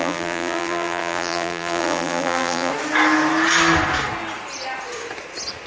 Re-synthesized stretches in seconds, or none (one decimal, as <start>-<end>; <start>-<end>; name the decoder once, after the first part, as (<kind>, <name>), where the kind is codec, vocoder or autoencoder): 0.0-2.7 (vocoder, BigVGAN v2)